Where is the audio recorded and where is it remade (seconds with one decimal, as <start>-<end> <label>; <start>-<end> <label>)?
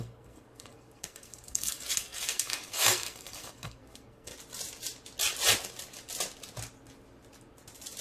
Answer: 0.0-4.3 remade; 4.3-8.0 recorded